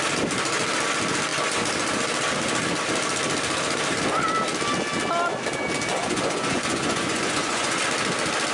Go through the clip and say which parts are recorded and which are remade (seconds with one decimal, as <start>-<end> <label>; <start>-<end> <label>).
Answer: 0.0-5.9 recorded; 5.9-7.8 remade; 7.8-8.5 recorded

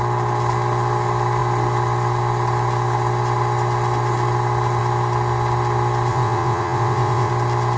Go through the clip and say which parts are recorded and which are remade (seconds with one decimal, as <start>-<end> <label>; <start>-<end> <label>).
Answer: 0.0-6.1 recorded; 6.1-7.3 remade; 7.3-7.8 recorded

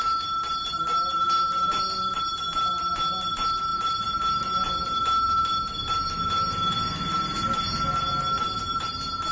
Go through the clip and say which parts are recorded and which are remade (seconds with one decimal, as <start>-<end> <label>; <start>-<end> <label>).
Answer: 0.0-9.3 recorded

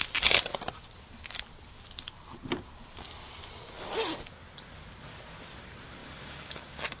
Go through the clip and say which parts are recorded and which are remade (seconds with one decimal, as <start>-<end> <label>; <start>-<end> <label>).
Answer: 0.0-6.0 recorded; 6.0-7.0 remade

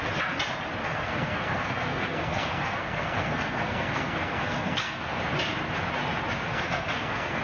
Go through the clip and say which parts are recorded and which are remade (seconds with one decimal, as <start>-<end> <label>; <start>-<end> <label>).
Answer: 0.0-0.8 recorded; 0.8-5.2 remade; 5.2-6.5 recorded; 6.5-7.4 remade

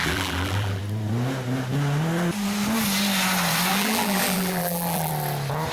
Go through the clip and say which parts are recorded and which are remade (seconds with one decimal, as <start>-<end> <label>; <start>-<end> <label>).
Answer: 0.0-0.8 remade; 0.8-3.7 recorded; 3.7-5.1 remade; 5.1-5.7 recorded

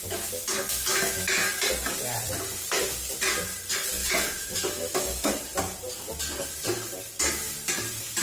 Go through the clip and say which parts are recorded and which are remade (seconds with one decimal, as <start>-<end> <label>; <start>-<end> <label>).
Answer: 0.0-0.9 recorded; 0.9-1.5 remade; 1.5-4.0 recorded; 4.0-5.3 remade; 5.3-8.2 recorded